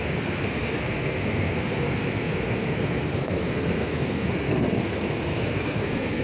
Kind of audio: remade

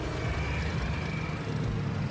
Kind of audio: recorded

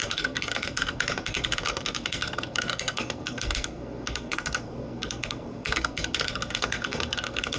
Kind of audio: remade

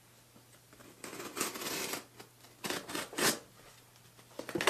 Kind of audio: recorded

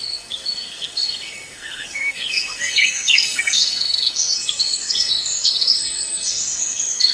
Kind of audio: remade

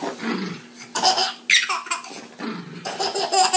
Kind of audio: recorded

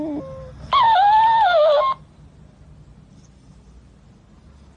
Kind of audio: recorded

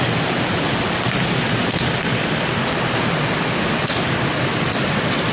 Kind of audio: recorded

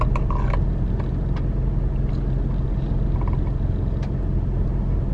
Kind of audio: recorded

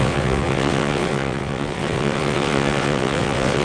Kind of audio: remade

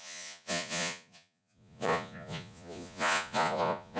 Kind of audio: remade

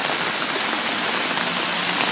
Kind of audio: recorded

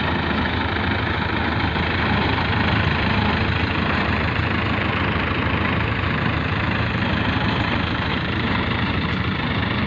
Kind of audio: remade